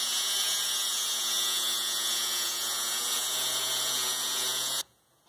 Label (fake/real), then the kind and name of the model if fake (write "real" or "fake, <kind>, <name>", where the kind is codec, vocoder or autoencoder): fake, vocoder, Vocos